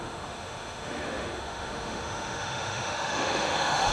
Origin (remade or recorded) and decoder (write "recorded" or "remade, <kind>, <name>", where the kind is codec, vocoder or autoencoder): remade, autoencoder, DAC-VAE